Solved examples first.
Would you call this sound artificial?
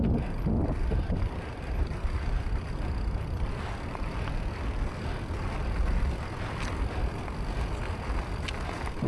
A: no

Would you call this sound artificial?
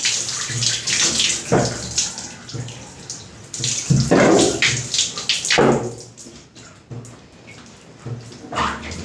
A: no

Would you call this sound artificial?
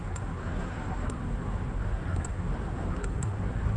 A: yes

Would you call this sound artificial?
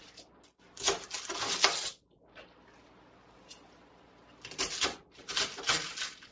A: no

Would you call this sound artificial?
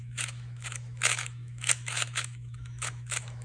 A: yes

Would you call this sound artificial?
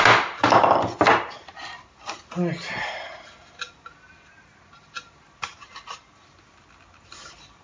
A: no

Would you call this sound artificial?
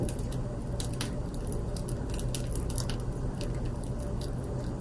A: no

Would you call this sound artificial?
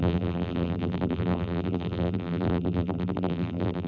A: yes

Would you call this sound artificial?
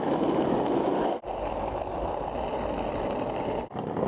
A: no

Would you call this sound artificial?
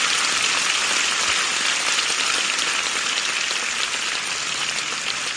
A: no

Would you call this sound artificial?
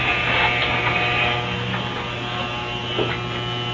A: no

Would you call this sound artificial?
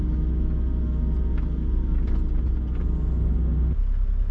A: no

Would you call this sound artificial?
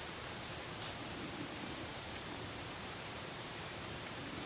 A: yes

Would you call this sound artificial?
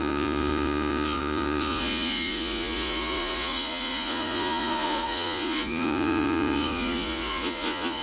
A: yes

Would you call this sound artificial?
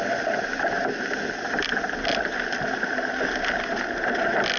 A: no